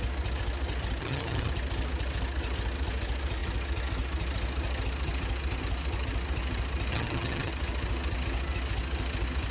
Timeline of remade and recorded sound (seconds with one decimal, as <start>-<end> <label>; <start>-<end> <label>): 0.0-1.0 recorded; 1.0-1.5 remade; 1.5-6.9 recorded; 6.9-7.5 remade; 7.5-9.5 recorded